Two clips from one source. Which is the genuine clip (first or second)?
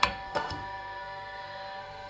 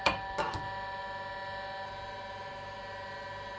second